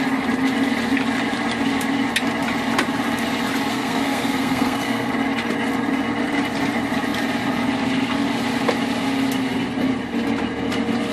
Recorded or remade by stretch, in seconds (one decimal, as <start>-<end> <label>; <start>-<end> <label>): 0.0-3.7 recorded; 3.7-5.1 remade; 5.1-11.1 recorded